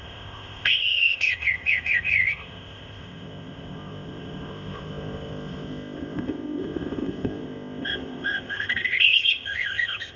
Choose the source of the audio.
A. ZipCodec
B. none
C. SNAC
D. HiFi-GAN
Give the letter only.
A